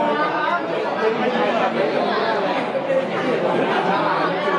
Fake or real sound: real